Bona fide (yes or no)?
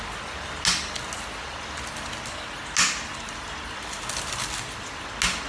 yes